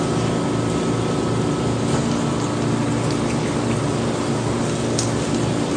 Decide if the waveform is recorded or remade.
recorded